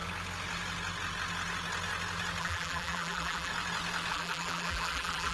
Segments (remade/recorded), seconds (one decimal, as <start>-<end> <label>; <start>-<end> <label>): 0.0-2.4 recorded; 2.4-3.5 remade; 3.5-4.1 recorded; 4.1-5.3 remade